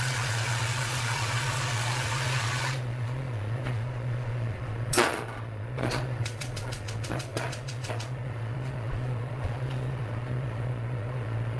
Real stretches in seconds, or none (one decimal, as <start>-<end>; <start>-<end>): none